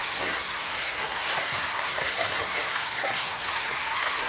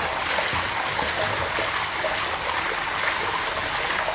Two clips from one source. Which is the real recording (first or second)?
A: second